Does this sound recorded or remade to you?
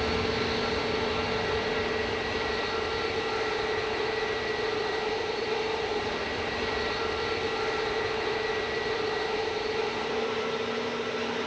remade